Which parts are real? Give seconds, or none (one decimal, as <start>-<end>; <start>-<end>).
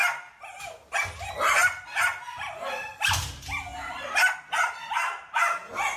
0.0-6.0